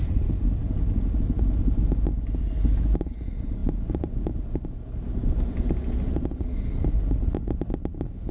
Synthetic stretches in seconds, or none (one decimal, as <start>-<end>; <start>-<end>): none